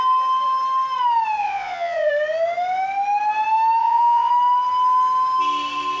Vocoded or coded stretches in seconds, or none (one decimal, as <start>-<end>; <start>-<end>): 1.4-2.1; 3.8-4.3